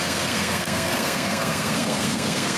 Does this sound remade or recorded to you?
remade